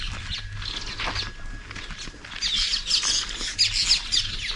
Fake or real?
real